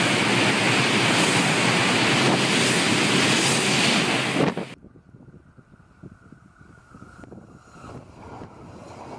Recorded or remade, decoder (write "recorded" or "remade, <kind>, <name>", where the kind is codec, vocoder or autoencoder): recorded